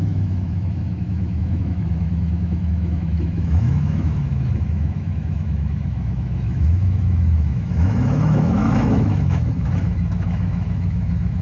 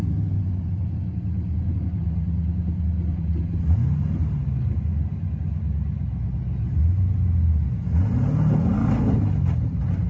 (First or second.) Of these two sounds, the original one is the second